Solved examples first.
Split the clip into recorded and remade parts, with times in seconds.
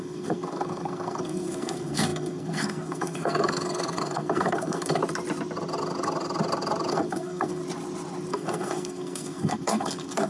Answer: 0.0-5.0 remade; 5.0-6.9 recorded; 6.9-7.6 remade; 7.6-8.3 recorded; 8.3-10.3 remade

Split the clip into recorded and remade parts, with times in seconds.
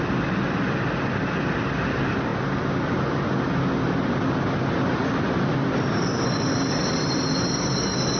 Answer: 0.0-8.2 recorded